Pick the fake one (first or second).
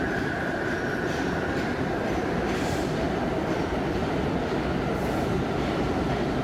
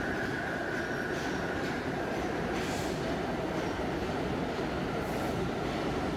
first